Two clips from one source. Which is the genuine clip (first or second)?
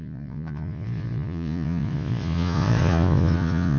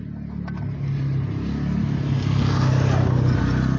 second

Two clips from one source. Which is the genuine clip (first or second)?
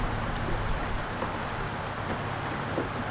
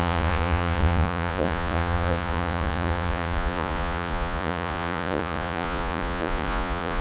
first